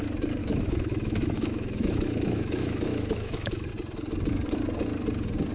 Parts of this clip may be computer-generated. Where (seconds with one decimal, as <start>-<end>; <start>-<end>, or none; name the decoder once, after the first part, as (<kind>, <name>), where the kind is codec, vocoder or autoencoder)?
0.4-3.7 (autoencoder, DAC-VAE)